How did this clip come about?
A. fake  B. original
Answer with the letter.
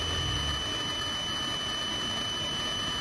B